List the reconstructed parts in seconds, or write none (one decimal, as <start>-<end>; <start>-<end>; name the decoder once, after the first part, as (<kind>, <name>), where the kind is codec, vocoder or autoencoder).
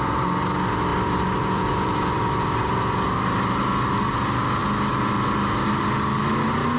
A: 0.9-2.2 (vocoder, BigVGAN v2)